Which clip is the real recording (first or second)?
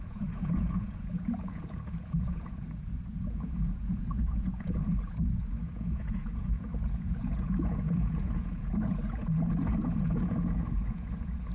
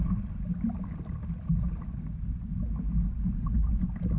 second